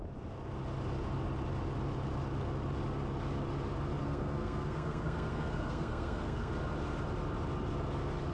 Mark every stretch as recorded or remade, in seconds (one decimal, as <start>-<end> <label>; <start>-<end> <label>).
0.0-4.0 recorded; 4.0-6.5 remade; 6.5-8.3 recorded